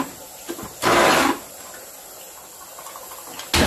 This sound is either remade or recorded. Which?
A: recorded